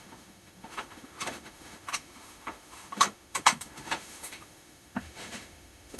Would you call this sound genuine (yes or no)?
no